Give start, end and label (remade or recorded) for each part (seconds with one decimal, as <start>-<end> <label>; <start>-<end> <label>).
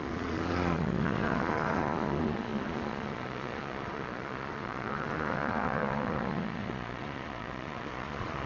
0.0-8.5 remade